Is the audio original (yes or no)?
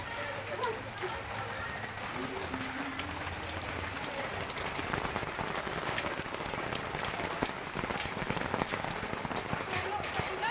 yes